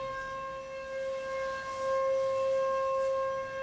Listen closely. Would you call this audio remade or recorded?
recorded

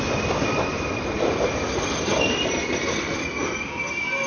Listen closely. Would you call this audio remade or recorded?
recorded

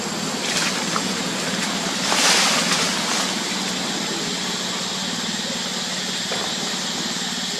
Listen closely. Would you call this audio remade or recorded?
recorded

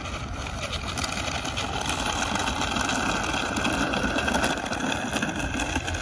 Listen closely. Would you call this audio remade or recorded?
recorded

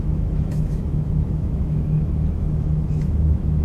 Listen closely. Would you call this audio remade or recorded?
remade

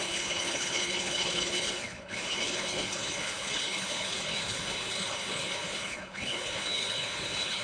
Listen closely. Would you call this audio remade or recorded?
remade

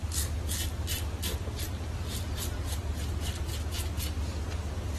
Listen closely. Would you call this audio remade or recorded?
recorded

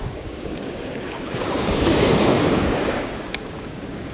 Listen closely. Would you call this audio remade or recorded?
remade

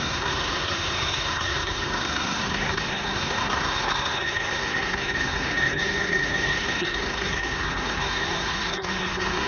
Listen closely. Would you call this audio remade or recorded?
remade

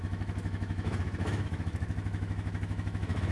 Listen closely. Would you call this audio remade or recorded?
remade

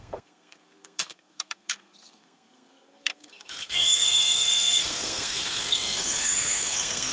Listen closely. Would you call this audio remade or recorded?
remade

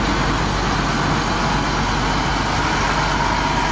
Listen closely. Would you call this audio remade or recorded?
recorded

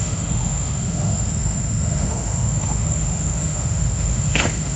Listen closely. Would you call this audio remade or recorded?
remade